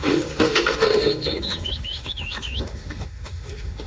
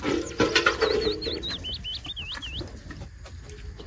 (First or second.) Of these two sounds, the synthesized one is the first